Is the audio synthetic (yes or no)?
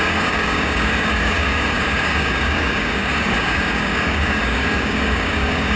yes